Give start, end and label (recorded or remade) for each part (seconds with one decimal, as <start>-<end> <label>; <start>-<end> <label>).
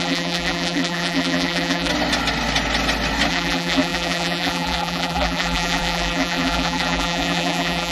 0.0-1.9 remade; 1.9-3.3 recorded; 3.3-7.9 remade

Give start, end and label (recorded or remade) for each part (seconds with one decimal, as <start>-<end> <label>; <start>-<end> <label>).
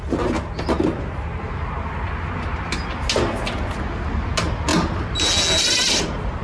0.0-6.4 recorded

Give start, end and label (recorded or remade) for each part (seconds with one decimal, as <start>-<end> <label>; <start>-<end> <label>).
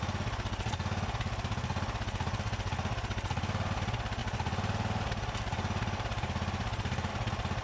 0.0-4.2 recorded; 4.2-7.1 remade; 7.1-7.6 recorded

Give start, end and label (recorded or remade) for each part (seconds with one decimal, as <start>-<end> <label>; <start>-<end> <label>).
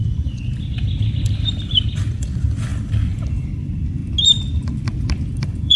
0.0-4.0 remade; 4.0-5.3 recorded; 5.3-5.8 remade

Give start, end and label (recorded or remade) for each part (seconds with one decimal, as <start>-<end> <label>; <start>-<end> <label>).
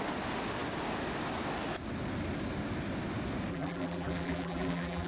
0.0-3.5 recorded; 3.5-5.1 remade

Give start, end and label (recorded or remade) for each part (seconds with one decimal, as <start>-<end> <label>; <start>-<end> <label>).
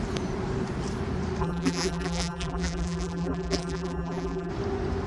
0.0-1.4 recorded; 1.4-4.5 remade; 4.5-5.1 recorded